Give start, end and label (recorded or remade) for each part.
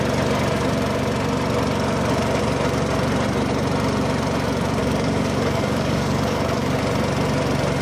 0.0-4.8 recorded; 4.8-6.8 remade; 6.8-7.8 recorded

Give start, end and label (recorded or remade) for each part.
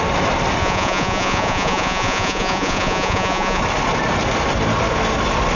0.0-0.6 recorded; 0.6-3.6 remade; 3.6-5.6 recorded